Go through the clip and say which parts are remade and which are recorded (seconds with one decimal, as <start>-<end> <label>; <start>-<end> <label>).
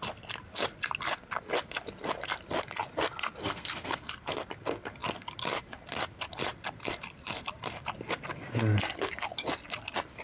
0.0-3.4 recorded; 3.4-4.1 remade; 4.1-10.2 recorded